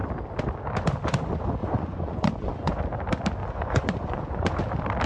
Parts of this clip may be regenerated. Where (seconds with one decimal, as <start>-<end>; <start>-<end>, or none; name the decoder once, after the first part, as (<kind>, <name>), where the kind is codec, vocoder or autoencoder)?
1.6-2.8 (vocoder, Vocos); 3.4-4.6